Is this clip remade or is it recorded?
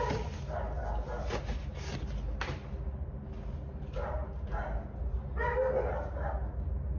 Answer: recorded